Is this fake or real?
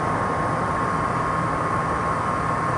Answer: real